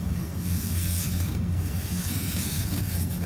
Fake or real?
fake